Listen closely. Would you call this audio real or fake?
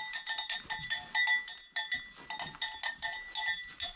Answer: real